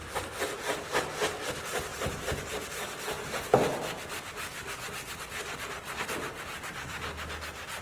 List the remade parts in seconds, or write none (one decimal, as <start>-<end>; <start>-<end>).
none